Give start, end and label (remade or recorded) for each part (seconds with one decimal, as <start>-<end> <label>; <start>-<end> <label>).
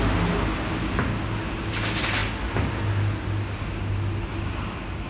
0.0-5.1 recorded